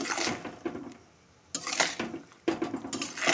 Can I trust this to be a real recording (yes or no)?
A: yes